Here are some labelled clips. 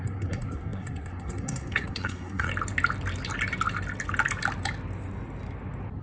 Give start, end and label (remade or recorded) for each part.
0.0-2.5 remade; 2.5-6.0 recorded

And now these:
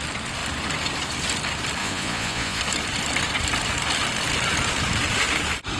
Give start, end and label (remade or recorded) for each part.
0.0-1.8 recorded; 1.8-2.6 remade; 2.6-5.8 recorded

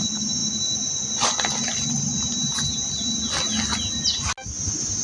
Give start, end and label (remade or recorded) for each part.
0.0-5.0 recorded

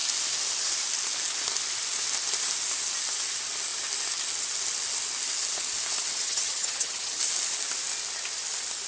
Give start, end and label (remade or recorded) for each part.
0.0-6.1 recorded; 6.1-7.2 remade; 7.2-8.9 recorded